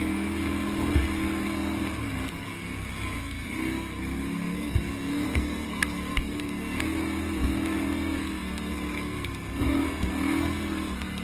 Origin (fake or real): fake